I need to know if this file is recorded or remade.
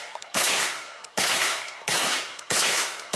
remade